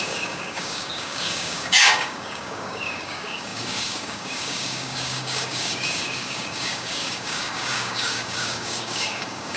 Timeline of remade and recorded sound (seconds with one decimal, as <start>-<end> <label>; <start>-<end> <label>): 0.0-9.6 remade